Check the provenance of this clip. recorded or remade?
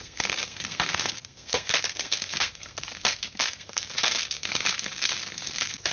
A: remade